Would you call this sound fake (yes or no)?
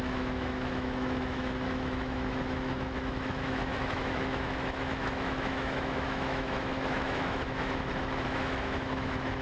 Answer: yes